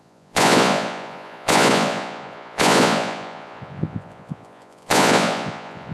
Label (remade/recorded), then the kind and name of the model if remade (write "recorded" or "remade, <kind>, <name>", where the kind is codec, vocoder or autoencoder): remade, vocoder, Vocos